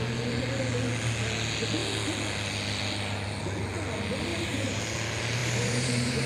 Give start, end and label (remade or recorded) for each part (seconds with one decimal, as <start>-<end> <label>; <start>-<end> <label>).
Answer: 0.0-4.3 recorded; 4.3-4.8 remade; 4.8-5.4 recorded; 5.4-6.3 remade